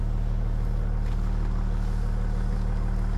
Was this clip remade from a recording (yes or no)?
no